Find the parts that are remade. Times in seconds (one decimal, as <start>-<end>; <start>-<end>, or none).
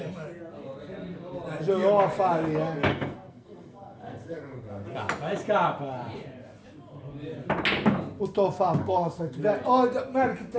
2.9-4.7; 8.8-9.4